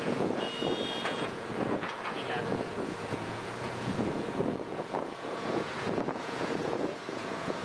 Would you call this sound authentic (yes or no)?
no